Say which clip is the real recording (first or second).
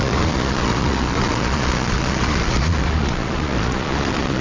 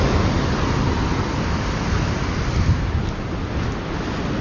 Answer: second